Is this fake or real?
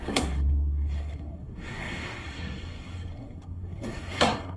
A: fake